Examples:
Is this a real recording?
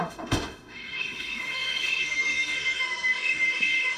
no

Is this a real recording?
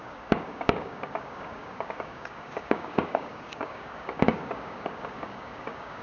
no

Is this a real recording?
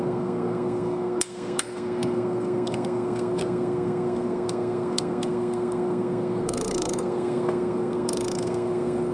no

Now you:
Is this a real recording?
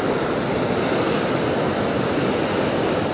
yes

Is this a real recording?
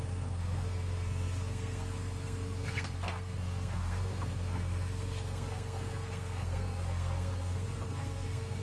no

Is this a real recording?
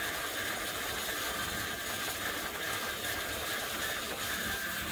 no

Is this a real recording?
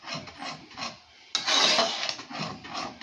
yes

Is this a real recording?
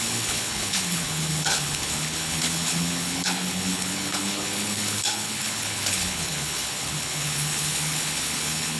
no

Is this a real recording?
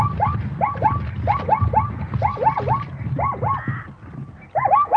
yes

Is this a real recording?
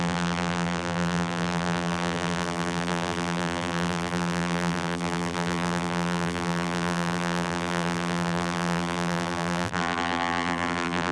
no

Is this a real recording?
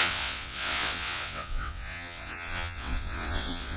no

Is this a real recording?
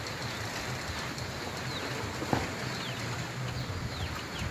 yes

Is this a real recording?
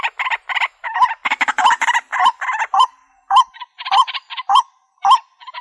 yes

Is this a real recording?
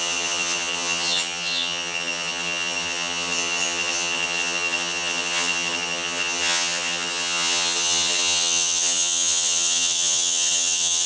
no